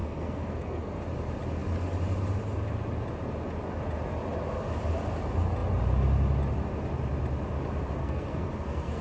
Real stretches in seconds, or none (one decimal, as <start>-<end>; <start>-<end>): 1.0-8.0

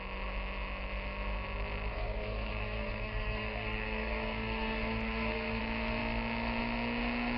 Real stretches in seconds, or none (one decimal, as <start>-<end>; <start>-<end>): 0.0-1.9; 5.6-7.4

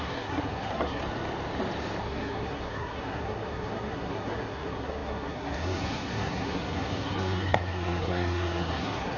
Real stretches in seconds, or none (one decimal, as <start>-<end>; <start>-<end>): 1.0-2.0

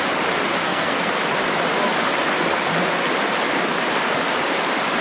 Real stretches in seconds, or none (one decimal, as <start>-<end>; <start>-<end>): 0.0-0.6; 1.1-5.0